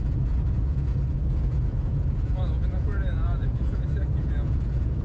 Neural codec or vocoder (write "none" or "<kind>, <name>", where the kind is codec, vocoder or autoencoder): vocoder, Vocos